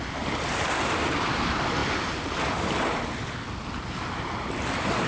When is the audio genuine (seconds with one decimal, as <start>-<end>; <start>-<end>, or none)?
0.0-5.1